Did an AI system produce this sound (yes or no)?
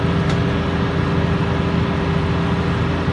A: no